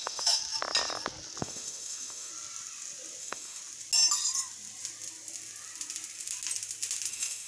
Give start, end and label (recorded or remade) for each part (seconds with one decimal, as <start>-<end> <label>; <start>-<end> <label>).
0.0-0.4 remade; 0.4-1.4 recorded; 1.4-2.3 remade; 2.3-3.2 recorded; 3.2-3.6 remade; 3.6-7.1 recorded; 7.1-7.5 remade